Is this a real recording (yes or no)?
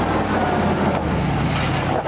yes